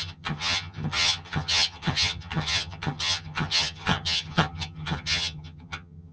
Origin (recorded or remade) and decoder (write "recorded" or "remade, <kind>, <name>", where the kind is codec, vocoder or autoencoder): remade, vocoder, HiFi-GAN